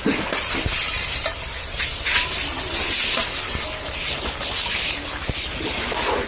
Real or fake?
real